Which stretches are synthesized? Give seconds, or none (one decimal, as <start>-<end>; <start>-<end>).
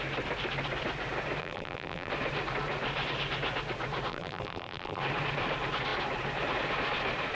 1.4-2.1; 4.1-5.0